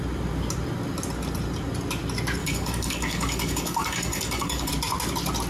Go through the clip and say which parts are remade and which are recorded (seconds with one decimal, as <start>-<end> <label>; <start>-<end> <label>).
0.0-2.4 recorded; 2.4-4.7 remade; 4.7-5.5 recorded